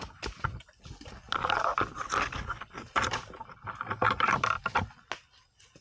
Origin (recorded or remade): recorded